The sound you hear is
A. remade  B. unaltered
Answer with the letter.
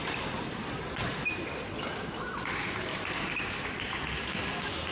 A